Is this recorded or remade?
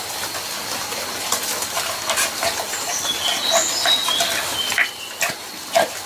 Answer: recorded